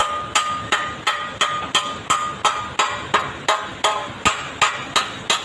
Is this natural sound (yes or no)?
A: yes